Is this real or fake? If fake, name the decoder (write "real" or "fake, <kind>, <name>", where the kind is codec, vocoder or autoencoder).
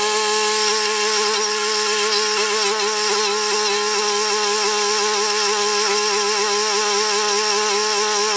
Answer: real